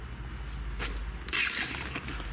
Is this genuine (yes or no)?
yes